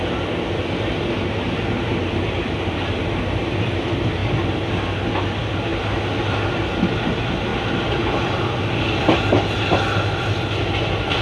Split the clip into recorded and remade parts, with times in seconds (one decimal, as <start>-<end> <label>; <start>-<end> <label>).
0.0-11.2 recorded